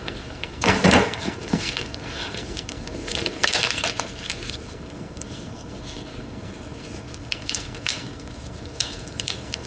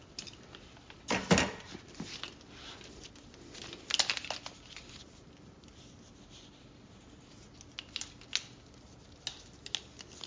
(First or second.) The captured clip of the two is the second